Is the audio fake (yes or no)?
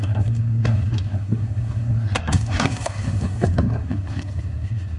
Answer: yes